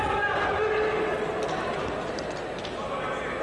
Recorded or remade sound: recorded